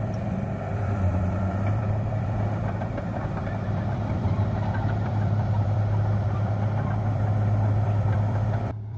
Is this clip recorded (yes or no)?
no